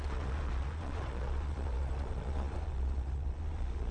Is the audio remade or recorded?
remade